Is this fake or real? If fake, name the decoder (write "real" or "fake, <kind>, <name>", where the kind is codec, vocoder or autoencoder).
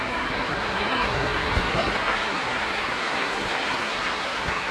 fake, codec, SNAC